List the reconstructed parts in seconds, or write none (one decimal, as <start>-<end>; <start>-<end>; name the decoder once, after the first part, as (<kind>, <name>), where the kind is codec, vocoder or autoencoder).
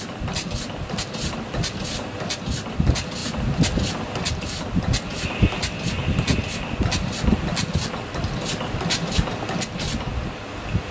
none